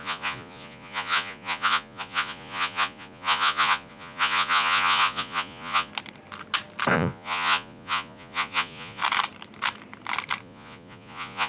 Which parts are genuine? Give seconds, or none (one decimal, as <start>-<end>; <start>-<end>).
5.9-6.9; 9.0-10.4